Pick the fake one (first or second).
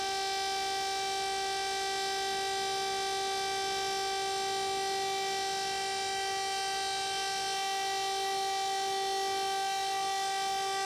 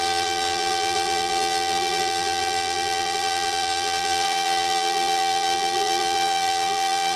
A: second